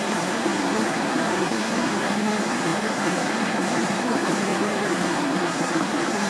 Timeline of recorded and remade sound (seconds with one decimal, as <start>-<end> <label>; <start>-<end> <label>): 0.0-6.3 remade